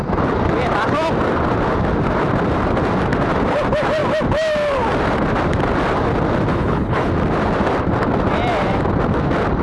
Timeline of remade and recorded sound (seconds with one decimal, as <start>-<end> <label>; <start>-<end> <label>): 0.0-6.5 recorded; 6.5-7.1 remade; 7.1-9.6 recorded